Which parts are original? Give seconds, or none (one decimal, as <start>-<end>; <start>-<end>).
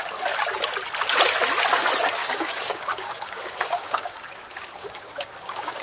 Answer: 0.0-2.2